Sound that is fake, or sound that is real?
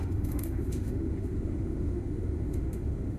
fake